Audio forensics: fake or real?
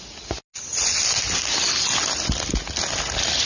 real